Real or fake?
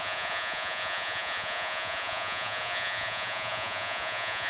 fake